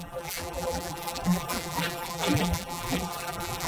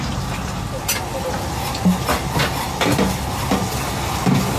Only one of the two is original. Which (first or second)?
second